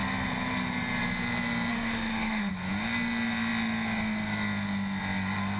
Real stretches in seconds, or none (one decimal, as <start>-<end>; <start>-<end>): 0.0-1.7; 2.5-5.6

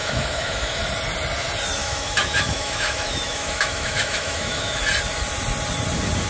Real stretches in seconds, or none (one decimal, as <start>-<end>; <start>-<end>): 0.8-1.8; 4.8-6.3

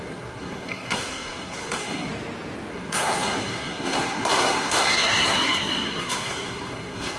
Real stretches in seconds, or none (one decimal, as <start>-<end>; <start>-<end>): 2.1-2.7

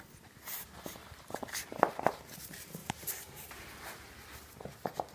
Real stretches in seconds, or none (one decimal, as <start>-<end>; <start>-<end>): 0.0-1.0; 2.2-2.8; 3.7-5.1

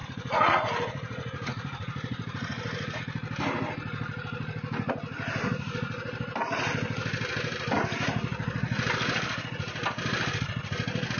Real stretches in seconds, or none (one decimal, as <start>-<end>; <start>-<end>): 3.0-11.2

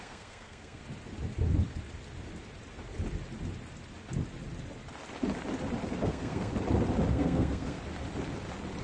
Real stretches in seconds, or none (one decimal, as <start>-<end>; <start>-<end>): 0.8-6.0; 6.5-7.1; 7.8-8.8